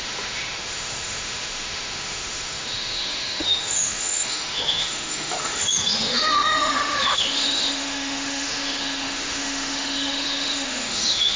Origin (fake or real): fake